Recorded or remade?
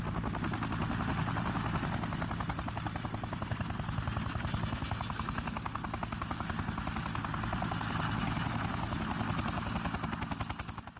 recorded